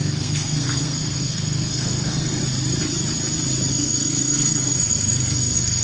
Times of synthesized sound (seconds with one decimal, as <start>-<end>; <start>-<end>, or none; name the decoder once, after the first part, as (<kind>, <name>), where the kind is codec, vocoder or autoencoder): 0.0-2.4 (codec, SNAC); 3.7-5.8